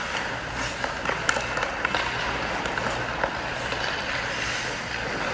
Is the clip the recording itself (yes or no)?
yes